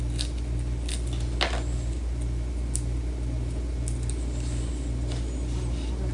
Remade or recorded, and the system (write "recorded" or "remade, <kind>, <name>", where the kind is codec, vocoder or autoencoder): recorded